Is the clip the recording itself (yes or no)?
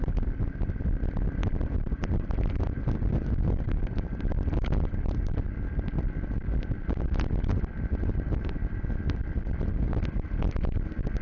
yes